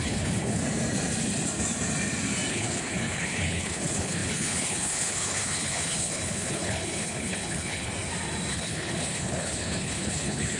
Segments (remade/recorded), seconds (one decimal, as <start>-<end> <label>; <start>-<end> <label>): 0.0-0.6 remade; 0.6-2.5 recorded; 2.5-7.9 remade; 7.9-8.5 recorded; 8.5-10.6 remade